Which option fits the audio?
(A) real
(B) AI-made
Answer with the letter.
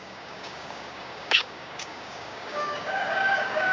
B